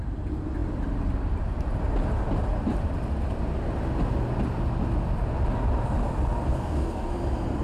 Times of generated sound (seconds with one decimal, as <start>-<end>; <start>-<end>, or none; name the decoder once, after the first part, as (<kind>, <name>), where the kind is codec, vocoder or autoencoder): 6.5-7.1 (codec, DAC)